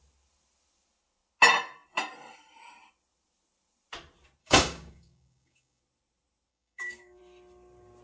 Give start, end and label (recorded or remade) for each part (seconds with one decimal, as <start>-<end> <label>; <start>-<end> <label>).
0.0-4.4 recorded; 4.4-5.8 remade; 5.8-6.5 recorded; 6.5-7.2 remade; 7.2-8.0 recorded